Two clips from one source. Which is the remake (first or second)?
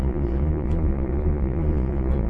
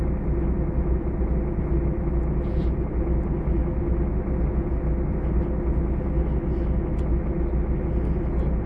first